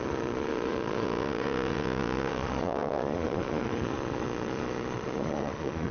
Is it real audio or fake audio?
fake